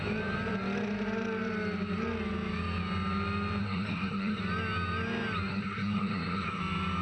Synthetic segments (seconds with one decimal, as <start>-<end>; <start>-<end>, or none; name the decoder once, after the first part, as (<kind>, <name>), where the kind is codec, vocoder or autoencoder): 3.6-4.4 (codec, SNAC); 5.5-6.6